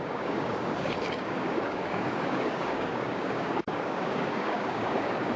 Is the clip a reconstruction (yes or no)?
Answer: yes